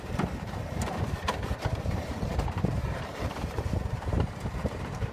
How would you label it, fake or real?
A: fake